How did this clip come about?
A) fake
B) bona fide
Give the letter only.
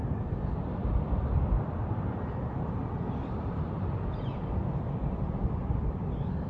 B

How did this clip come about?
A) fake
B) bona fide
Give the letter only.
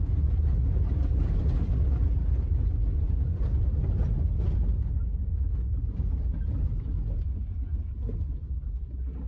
B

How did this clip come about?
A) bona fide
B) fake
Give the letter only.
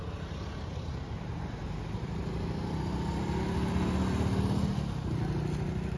A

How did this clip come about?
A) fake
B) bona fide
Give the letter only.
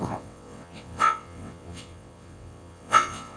A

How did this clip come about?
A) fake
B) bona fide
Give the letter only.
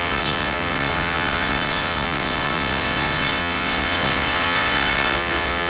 A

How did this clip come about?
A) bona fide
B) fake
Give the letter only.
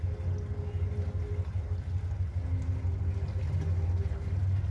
A